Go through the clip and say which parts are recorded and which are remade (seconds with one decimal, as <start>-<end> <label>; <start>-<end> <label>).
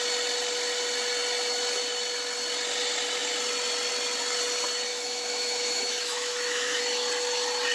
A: 0.0-4.9 recorded; 4.9-6.8 remade; 6.8-7.7 recorded